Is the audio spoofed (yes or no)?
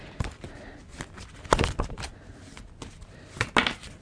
no